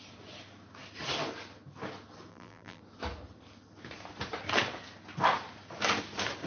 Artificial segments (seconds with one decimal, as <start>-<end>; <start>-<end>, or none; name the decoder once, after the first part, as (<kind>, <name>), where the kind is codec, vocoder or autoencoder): 2.3-2.8 (vocoder, BigVGAN v2)